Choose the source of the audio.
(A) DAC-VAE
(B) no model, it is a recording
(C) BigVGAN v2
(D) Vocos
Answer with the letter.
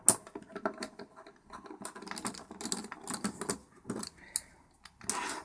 B